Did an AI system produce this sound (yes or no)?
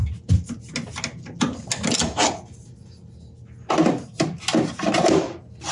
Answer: no